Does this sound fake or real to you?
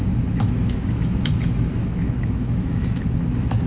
fake